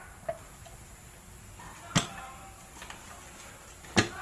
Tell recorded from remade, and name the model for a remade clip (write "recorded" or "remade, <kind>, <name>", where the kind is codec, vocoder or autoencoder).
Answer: recorded